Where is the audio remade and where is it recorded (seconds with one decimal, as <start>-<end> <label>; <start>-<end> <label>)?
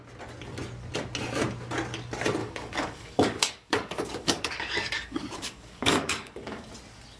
0.0-2.4 recorded; 2.4-6.7 remade; 6.7-7.2 recorded